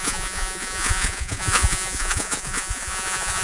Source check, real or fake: fake